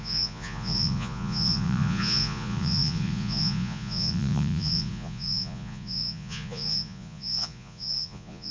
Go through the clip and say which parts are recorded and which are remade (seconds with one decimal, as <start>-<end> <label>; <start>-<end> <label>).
0.0-8.5 remade